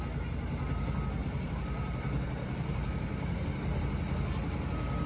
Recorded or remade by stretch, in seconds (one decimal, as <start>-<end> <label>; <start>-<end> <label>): 0.0-1.2 recorded; 1.2-3.8 remade; 3.8-5.1 recorded